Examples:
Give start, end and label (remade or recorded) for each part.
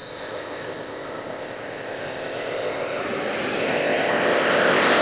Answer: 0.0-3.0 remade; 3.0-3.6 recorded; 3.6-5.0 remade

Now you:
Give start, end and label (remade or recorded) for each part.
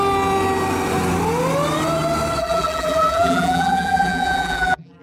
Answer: 0.0-2.4 recorded; 2.4-5.0 remade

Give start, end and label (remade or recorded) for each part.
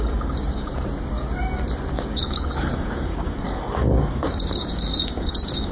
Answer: 0.0-0.7 remade; 0.7-1.9 recorded; 1.9-5.7 remade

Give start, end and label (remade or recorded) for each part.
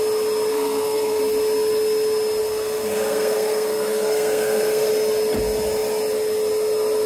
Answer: 0.0-0.5 recorded; 0.5-1.2 remade; 1.2-2.4 recorded; 2.4-4.9 remade; 4.9-7.1 recorded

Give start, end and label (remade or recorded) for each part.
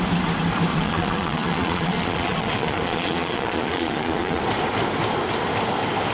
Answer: 0.0-0.7 recorded; 0.7-4.4 remade; 4.4-6.1 recorded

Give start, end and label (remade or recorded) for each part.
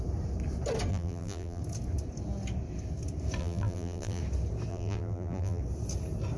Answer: 0.0-0.9 recorded; 0.9-1.6 remade; 1.6-3.4 recorded; 3.4-4.2 remade; 4.2-4.7 recorded; 4.7-5.6 remade; 5.6-6.4 recorded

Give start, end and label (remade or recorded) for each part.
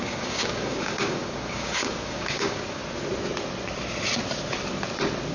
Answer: 0.0-2.8 remade; 2.8-5.3 recorded